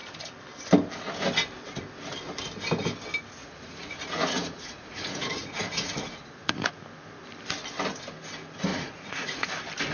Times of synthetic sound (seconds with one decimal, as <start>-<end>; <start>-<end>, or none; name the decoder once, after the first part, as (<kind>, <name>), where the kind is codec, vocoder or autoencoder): 3.4-6.8 (vocoder, Vocos); 8.7-9.5